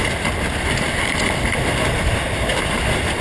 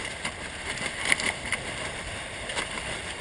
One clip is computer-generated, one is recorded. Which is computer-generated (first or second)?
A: second